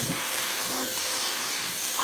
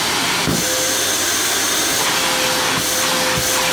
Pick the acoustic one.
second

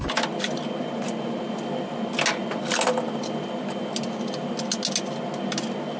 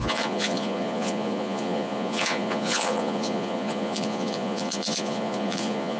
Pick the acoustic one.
first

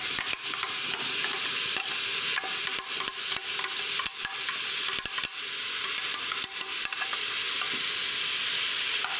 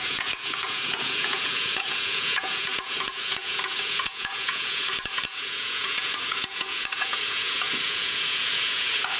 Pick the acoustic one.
first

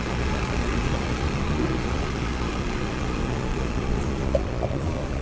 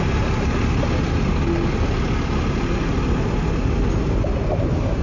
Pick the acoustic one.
second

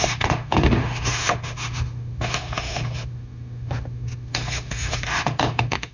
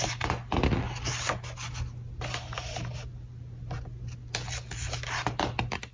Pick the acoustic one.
second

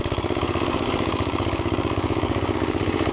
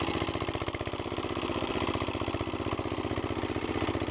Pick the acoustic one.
second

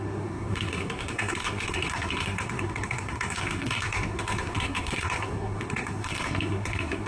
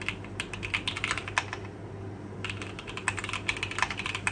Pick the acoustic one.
second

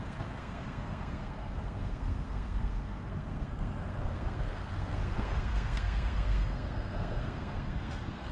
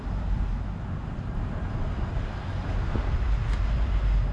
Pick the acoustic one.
second